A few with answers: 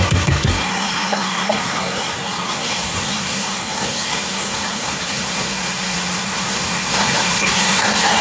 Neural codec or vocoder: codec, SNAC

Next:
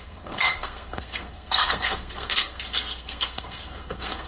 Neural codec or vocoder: codec, SNAC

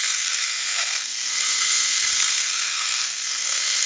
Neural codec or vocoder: codec, SNAC